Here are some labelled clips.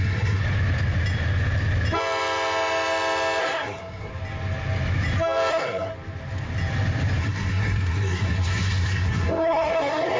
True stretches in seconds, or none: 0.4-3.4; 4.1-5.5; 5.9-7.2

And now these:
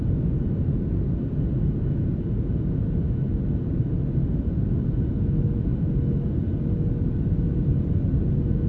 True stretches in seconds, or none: 0.0-8.7

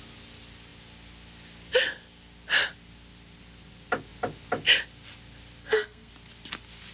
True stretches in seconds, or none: 0.0-5.6; 6.1-6.9

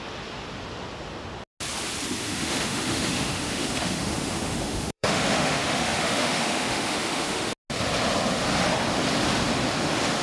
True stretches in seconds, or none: 0.0-2.2; 7.5-10.2

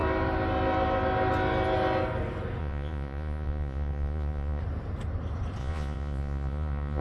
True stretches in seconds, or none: 0.0-2.6; 4.6-5.6